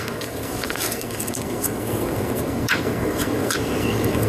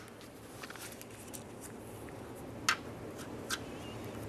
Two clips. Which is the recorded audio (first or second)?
second